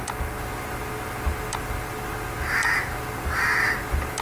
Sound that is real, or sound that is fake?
real